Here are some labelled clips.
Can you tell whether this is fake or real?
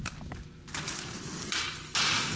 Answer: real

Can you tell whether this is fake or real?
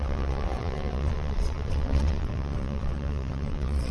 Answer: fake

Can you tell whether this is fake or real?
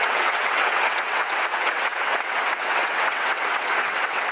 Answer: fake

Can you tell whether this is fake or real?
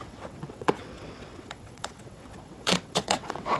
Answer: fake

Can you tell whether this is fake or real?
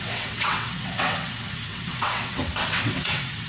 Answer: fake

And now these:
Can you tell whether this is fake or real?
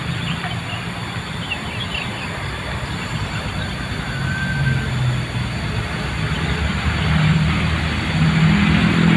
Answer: real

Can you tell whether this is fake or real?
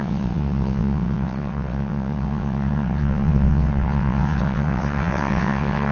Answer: fake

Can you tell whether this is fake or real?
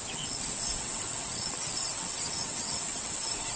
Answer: fake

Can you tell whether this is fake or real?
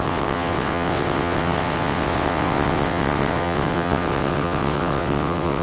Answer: fake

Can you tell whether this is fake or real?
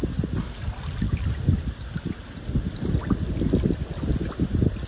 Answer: real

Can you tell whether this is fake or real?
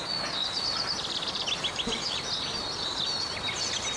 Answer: real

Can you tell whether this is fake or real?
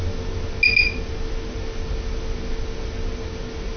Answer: real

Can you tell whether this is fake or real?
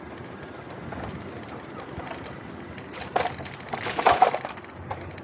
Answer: real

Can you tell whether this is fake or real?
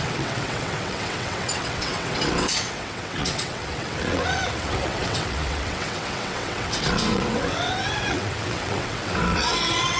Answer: fake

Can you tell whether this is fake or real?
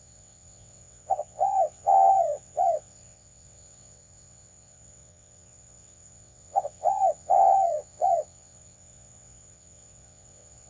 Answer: fake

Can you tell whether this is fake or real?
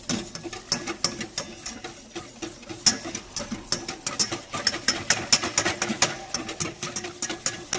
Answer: real